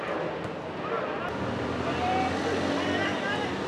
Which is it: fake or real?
real